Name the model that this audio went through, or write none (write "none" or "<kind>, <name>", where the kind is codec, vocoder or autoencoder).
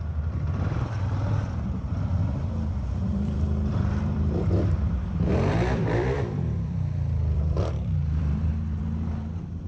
vocoder, BigVGAN v2